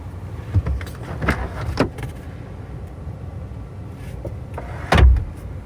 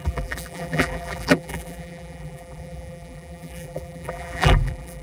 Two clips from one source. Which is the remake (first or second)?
second